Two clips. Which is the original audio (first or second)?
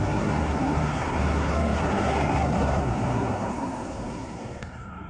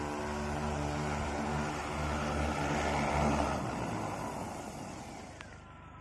second